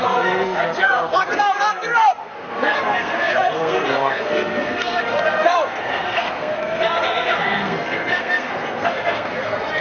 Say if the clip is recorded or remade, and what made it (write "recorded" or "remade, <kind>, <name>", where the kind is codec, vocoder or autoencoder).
remade, codec, SNAC